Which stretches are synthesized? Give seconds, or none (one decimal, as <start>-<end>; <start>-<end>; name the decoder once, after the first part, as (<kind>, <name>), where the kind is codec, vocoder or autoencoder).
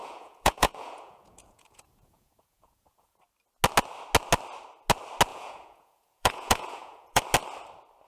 0.0-3.2 (vocoder, Vocos); 5.3-7.2